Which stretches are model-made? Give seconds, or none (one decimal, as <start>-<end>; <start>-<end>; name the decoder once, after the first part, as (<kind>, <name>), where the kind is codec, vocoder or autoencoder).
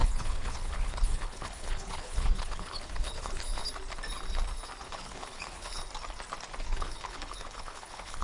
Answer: 0.0-3.6 (codec, HILCodec); 4.8-5.8; 6.6-8.2